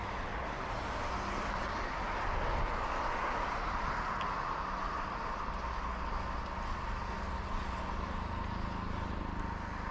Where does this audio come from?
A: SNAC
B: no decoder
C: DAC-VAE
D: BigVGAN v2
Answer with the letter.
B